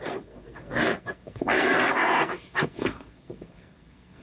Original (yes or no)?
no